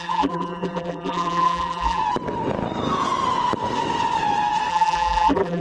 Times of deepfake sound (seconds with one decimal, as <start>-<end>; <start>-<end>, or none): 0.0-2.0; 4.7-5.6